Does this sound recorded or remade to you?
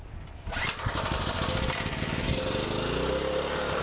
recorded